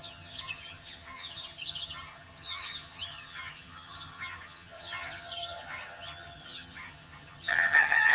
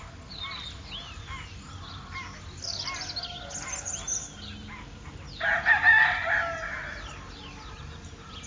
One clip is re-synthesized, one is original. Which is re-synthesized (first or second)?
first